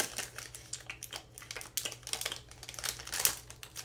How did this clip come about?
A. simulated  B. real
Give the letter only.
B